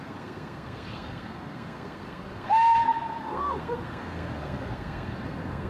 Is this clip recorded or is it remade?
remade